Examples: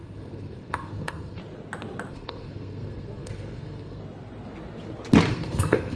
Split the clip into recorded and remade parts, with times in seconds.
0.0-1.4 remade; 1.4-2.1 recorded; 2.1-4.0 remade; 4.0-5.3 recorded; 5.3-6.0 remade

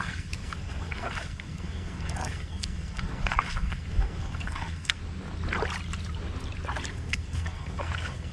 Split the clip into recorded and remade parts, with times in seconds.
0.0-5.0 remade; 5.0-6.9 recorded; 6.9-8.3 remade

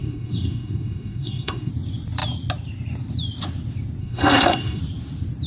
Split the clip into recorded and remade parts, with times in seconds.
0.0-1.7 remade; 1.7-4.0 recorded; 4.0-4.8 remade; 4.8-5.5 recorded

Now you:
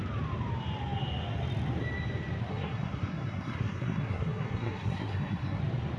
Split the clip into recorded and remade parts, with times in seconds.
0.0-2.5 recorded; 2.5-5.6 remade; 5.6-6.0 recorded

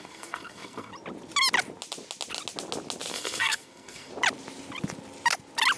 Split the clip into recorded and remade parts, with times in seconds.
0.0-0.9 remade; 0.9-3.1 recorded; 3.1-4.1 remade; 4.1-5.8 recorded

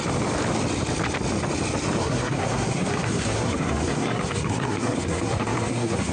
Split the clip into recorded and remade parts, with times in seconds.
0.0-2.0 recorded; 2.0-6.1 remade

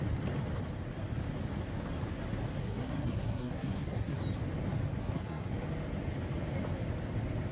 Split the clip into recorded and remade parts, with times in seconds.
0.0-2.6 recorded; 2.6-4.2 remade; 4.2-5.0 recorded; 5.0-5.5 remade; 5.5-7.5 recorded